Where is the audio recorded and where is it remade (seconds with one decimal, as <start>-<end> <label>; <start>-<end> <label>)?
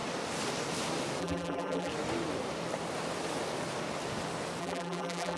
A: 0.0-1.2 recorded; 1.2-1.9 remade; 1.9-4.6 recorded; 4.6-5.4 remade